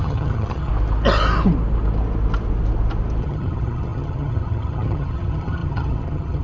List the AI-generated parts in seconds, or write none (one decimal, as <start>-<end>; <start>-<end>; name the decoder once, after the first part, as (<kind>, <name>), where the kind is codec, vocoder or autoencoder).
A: 0.0-0.7 (vocoder, HiFi-GAN); 3.2-6.4

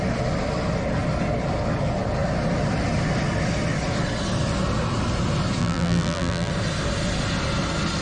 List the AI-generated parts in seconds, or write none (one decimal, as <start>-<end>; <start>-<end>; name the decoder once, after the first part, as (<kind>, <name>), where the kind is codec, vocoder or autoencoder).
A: 5.6-6.5 (vocoder, BigVGAN v2)

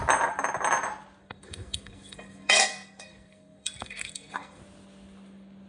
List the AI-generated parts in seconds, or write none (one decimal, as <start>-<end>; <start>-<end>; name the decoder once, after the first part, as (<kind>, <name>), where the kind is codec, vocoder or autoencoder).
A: 1.2-4.6 (codec, SNAC)

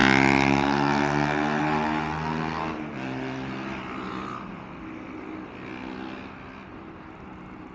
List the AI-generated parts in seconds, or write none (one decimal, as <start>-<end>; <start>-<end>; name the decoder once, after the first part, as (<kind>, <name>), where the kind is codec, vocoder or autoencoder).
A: none

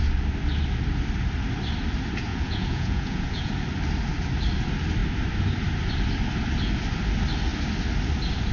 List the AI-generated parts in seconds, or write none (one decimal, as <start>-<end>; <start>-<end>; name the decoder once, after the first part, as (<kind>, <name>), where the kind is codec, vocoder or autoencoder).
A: 2.3-3.5 (vocoder, Vocos)

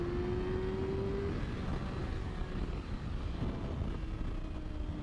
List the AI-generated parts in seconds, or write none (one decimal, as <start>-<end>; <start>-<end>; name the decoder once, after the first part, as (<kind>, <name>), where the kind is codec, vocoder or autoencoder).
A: 2.0-3.4 (codec, DAC)